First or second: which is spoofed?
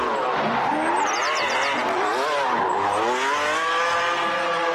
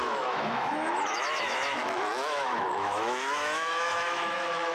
second